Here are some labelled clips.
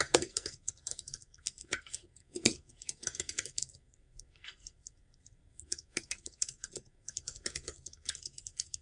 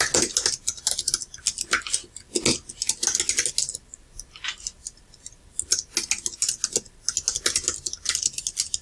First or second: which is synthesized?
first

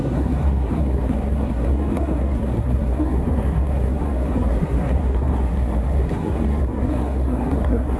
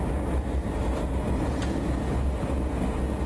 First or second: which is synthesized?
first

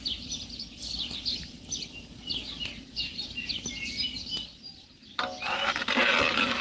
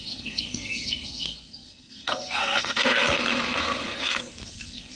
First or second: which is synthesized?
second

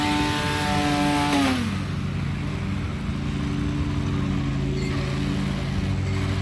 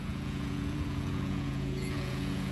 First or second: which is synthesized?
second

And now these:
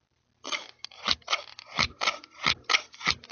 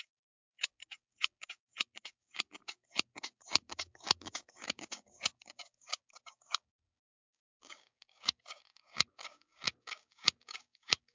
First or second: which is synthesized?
second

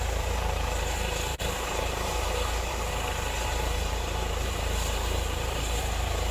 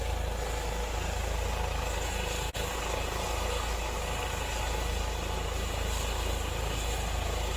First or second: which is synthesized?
first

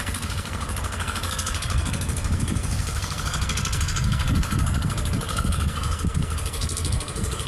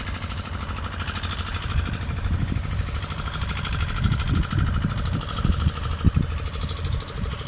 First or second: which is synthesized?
first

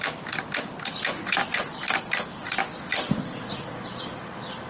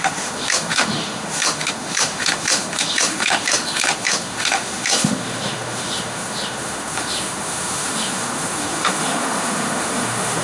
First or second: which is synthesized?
second